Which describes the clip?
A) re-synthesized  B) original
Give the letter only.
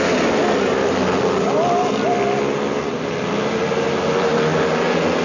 B